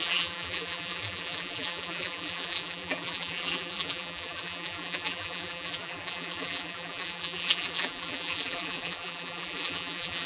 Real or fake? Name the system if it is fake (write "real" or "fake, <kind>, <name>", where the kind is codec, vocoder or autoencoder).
fake, vocoder, BigVGAN v2